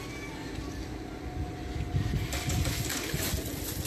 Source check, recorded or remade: recorded